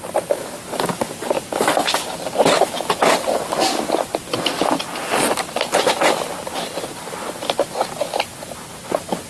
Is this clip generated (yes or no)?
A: no